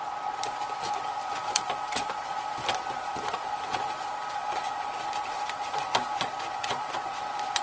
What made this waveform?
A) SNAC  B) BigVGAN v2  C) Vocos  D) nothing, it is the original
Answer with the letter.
B